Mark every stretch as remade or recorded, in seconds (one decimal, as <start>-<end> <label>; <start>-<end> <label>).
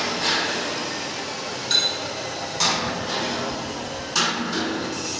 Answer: 0.0-1.5 recorded; 1.5-2.9 remade; 2.9-5.2 recorded